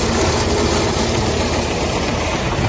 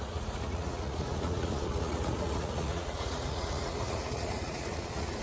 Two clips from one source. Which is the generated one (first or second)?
second